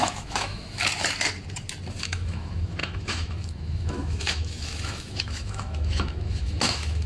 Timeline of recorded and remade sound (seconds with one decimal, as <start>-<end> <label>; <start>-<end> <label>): 0.0-0.9 remade; 0.9-2.0 recorded; 2.0-7.1 remade